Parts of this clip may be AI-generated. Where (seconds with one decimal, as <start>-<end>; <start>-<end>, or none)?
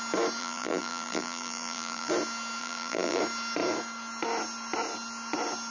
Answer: 0.4-2.1; 2.6-3.2